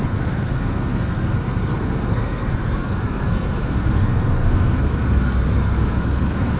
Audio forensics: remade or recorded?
remade